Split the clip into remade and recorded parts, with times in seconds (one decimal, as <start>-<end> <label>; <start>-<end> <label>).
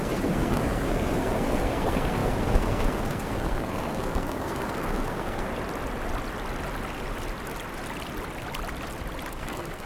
0.0-5.5 remade; 5.5-9.3 recorded; 9.3-9.9 remade